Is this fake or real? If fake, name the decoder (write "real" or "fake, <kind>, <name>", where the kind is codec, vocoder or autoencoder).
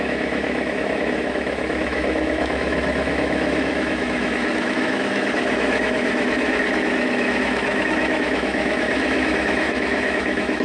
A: fake, autoencoder, DAC-VAE